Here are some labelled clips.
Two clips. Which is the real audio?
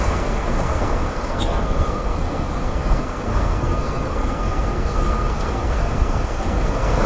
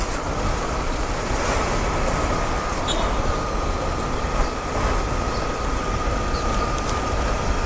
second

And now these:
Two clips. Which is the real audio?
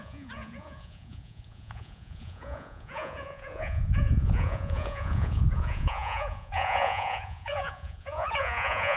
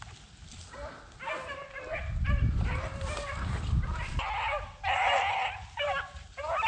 second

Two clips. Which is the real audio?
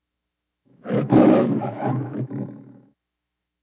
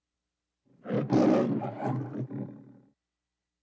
second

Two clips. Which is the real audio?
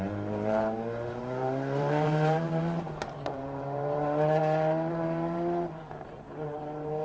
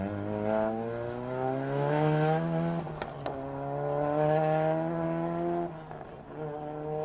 second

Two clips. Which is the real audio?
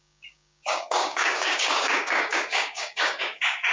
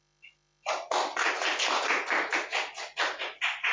second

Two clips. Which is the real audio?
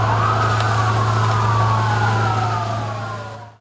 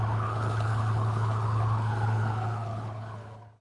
first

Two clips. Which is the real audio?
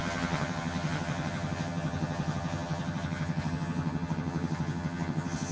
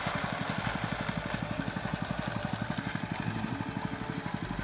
second